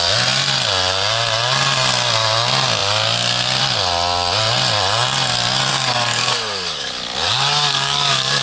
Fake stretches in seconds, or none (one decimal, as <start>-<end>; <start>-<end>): 5.7-8.4